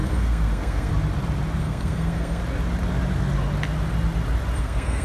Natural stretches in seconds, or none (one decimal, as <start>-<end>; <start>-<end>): 0.9-1.6; 2.4-4.6